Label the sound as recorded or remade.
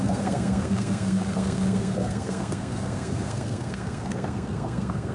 remade